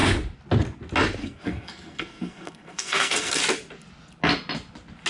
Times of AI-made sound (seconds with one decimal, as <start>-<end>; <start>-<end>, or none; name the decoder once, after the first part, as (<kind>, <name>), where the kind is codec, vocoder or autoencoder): 1.2-3.4 (codec, SNAC)